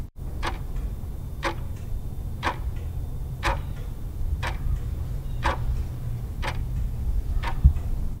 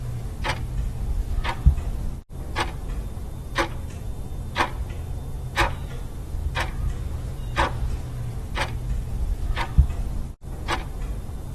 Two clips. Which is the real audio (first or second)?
second